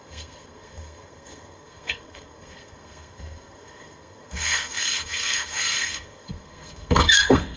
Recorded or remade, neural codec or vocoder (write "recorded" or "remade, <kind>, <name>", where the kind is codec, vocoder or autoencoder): remade, codec, SNAC